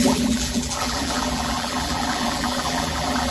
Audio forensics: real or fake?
fake